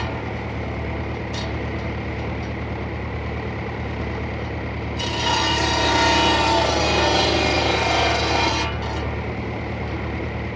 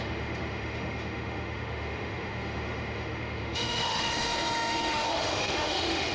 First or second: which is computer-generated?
second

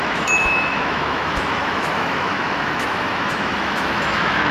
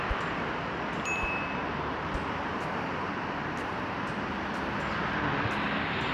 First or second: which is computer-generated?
first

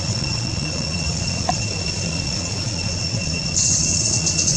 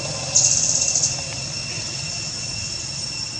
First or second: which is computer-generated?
first